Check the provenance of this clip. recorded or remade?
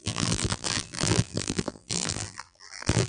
remade